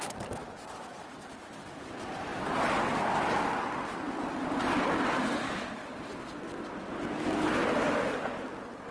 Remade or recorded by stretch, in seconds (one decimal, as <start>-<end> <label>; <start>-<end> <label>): 0.0-8.9 recorded